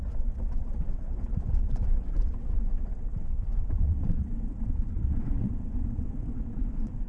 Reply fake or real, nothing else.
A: fake